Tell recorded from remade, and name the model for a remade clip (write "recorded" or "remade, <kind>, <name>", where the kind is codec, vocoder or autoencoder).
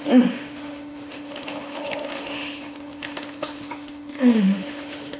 remade, autoencoder, DAC-VAE